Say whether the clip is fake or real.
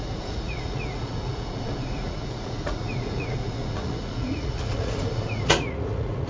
fake